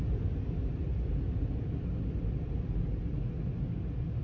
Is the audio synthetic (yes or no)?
no